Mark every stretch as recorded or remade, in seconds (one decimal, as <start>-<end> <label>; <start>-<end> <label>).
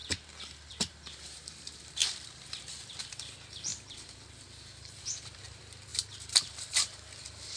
0.0-0.7 recorded; 0.7-5.9 remade; 5.9-6.4 recorded; 6.4-7.6 remade